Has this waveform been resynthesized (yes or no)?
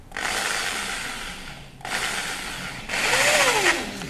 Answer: no